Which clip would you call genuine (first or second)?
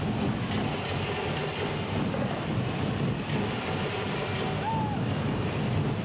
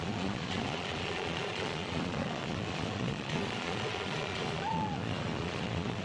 first